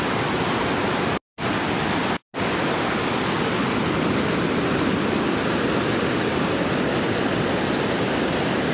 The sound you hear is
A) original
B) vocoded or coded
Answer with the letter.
A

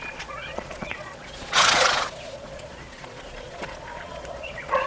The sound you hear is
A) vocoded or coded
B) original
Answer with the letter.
A